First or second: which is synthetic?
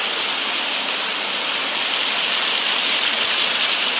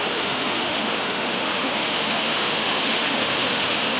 second